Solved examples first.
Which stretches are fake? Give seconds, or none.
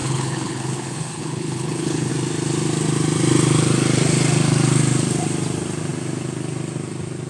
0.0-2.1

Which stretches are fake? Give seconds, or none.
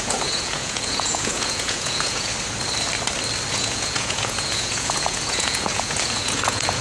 0.0-2.3; 3.5-6.8